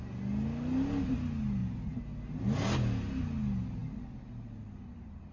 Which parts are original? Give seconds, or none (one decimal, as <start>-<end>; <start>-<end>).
0.0-5.3